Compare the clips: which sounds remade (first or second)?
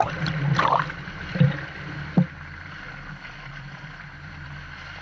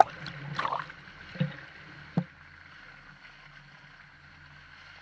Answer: first